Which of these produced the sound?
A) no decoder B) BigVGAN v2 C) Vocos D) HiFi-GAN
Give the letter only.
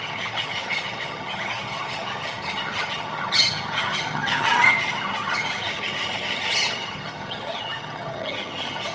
D